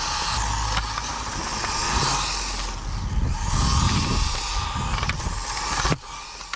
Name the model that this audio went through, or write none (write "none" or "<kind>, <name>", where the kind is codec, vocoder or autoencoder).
none